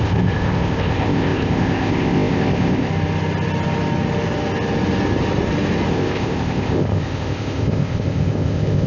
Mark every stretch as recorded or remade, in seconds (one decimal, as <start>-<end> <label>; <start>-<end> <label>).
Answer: 0.0-2.9 remade; 2.9-5.9 recorded; 5.9-8.9 remade